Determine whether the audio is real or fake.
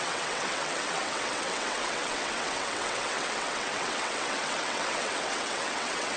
fake